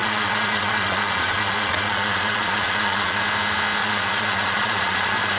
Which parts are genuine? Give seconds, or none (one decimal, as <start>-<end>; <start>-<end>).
3.2-3.8